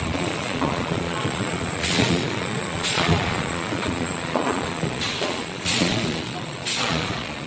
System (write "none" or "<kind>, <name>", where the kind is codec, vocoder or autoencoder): vocoder, Vocos